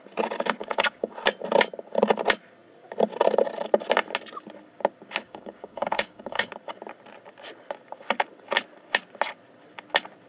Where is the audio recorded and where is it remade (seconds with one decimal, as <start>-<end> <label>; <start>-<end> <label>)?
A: 0.0-0.6 recorded; 0.6-1.1 remade; 1.1-5.2 recorded; 5.2-6.5 remade; 6.5-10.3 recorded